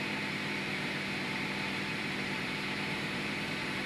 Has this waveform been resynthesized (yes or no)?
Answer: yes